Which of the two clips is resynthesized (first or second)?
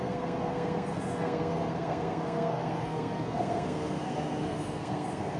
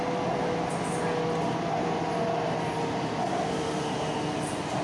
first